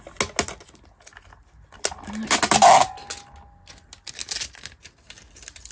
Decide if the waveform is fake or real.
real